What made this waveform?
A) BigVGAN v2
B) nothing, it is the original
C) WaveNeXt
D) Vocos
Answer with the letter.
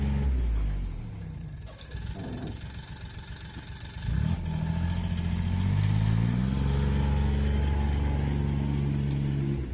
B